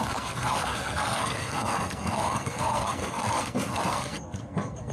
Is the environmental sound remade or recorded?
remade